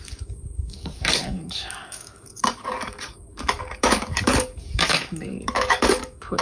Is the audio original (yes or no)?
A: no